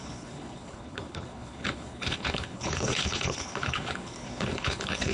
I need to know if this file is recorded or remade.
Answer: remade